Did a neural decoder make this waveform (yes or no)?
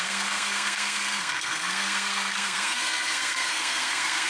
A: yes